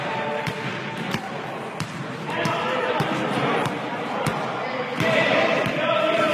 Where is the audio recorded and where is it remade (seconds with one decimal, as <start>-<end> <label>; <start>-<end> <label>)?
0.0-0.7 remade; 0.7-1.9 recorded; 1.9-6.3 remade